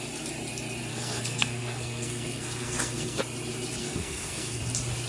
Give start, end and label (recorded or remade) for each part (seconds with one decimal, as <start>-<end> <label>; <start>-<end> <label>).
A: 0.0-0.9 recorded; 0.9-3.2 remade; 3.2-3.8 recorded; 3.8-4.6 remade; 4.6-5.1 recorded